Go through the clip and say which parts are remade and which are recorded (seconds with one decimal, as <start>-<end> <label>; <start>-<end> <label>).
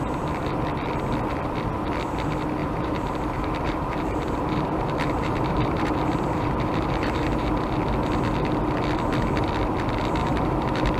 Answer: 0.0-2.6 recorded; 2.6-7.5 remade; 7.5-10.2 recorded; 10.2-11.0 remade